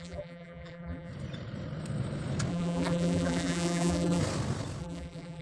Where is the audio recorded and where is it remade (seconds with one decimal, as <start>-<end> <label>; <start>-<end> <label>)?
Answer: 0.0-1.1 remade; 1.1-2.5 recorded; 2.5-4.2 remade; 4.2-4.8 recorded; 4.8-5.4 remade